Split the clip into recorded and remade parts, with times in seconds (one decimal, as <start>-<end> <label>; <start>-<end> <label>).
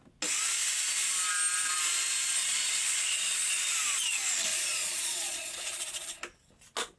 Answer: 0.0-2.4 recorded; 2.4-3.5 remade; 3.5-4.5 recorded; 4.5-6.2 remade; 6.2-7.0 recorded